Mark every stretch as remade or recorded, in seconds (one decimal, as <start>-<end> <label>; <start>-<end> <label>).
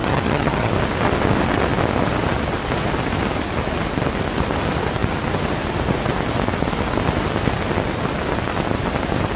0.0-0.7 remade; 0.7-9.4 recorded